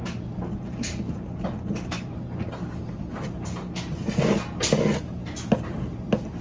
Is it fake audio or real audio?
real